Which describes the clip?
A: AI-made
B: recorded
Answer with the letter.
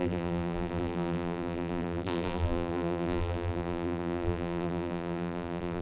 A